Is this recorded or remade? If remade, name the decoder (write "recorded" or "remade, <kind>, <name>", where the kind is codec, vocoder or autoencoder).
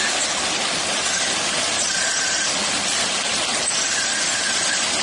recorded